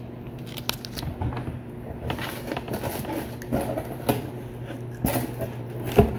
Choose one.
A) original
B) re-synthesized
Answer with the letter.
A